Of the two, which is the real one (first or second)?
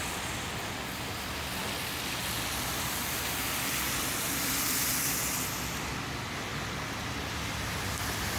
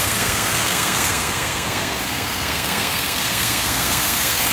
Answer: first